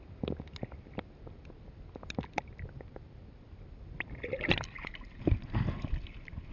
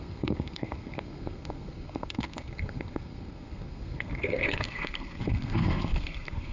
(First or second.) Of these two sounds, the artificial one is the second